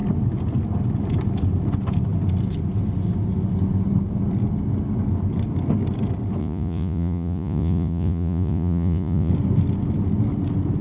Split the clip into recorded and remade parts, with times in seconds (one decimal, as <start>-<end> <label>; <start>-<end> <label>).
0.0-6.4 recorded; 6.4-9.3 remade; 9.3-10.8 recorded